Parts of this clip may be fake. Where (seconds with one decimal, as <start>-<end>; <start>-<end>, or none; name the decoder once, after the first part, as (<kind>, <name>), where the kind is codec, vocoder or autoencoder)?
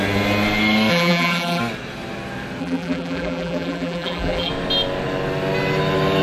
0.9-1.6 (vocoder, BigVGAN v2); 2.6-4.5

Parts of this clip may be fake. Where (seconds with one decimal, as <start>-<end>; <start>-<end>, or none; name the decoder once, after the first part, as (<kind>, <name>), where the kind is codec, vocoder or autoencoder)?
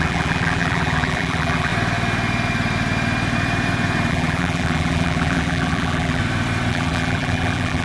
0.0-1.7 (vocoder, BigVGAN v2); 4.1-6.2; 6.7-7.8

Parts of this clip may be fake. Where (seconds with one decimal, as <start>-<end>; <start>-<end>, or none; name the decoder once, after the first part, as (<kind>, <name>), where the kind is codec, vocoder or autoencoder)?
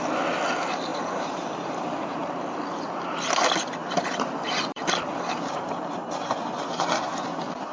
0.9-2.3 (vocoder, BigVGAN v2); 3.8-7.7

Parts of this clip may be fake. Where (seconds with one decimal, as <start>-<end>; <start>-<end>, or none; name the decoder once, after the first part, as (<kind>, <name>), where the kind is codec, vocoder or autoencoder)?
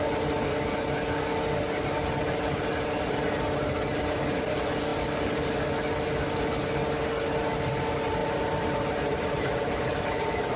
4.9-5.5 (vocoder, BigVGAN v2); 8.2-10.6